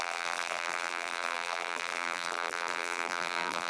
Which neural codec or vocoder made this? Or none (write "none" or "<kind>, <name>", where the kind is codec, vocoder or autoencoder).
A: vocoder, BigVGAN v2